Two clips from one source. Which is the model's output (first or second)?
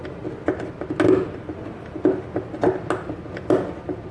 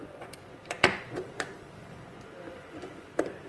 second